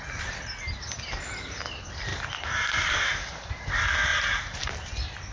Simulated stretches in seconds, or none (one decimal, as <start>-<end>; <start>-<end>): 2.1-3.5; 4.1-4.6